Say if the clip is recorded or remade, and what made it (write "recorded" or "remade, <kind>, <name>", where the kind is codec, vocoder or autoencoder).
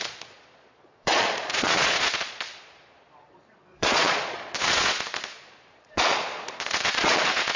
remade, vocoder, Vocos